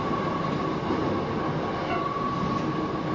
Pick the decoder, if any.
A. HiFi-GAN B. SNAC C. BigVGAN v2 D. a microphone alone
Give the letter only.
D